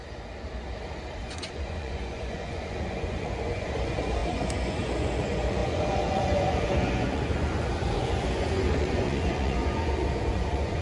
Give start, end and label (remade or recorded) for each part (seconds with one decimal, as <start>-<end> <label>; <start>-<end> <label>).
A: 0.0-1.2 recorded; 1.2-10.8 remade